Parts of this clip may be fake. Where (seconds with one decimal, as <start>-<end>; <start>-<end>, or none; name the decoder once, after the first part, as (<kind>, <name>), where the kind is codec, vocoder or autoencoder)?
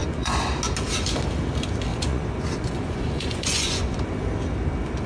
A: 0.0-0.5 (vocoder, Vocos); 1.9-4.0